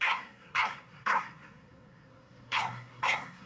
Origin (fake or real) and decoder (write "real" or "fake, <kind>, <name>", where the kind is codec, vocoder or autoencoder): fake, codec, SNAC